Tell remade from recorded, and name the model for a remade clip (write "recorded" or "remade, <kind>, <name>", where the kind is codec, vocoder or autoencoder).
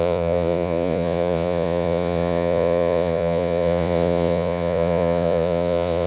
remade, vocoder, Vocos